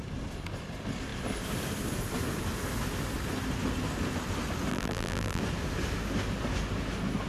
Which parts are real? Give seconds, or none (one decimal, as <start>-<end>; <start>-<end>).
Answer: 0.0-4.7; 5.4-7.3